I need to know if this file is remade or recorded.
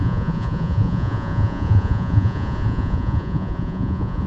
remade